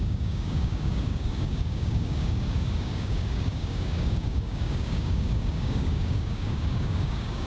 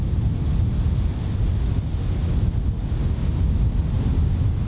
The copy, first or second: first